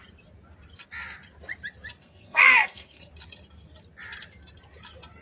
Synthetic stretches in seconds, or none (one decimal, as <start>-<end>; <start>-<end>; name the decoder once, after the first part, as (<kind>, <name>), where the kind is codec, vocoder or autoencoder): 2.0-3.1 (codec, SNAC)